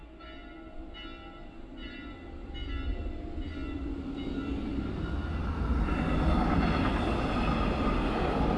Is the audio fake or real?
real